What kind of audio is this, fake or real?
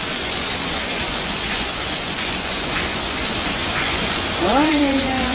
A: fake